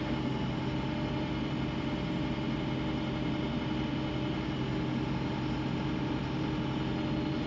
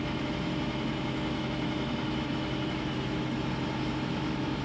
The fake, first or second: second